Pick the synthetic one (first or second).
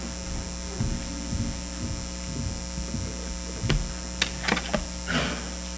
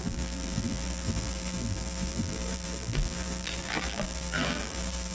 second